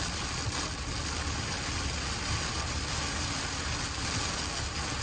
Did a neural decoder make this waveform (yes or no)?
no